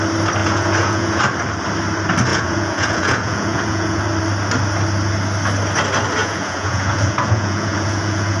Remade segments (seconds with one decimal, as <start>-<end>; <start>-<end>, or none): 0.4-1.2; 2.3-4.0; 6.2-8.4